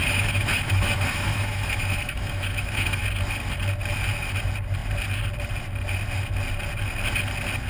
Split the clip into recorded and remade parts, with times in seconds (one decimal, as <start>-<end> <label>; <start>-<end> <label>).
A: 0.0-3.0 remade; 3.0-7.7 recorded